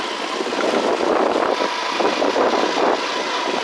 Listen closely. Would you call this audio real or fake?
real